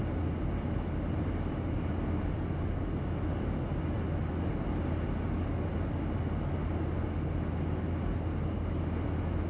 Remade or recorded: recorded